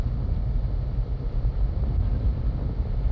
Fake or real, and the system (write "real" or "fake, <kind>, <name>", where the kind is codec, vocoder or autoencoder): real